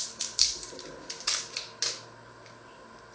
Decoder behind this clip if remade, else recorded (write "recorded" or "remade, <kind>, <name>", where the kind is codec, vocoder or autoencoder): recorded